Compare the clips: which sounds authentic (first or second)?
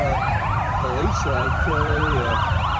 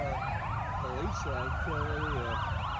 second